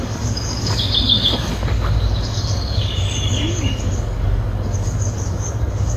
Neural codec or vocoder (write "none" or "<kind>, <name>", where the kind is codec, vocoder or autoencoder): codec, DAC